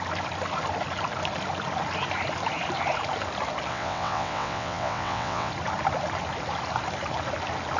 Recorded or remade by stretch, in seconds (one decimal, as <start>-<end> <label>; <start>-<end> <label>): 0.0-3.7 recorded; 3.7-5.5 remade; 5.5-7.8 recorded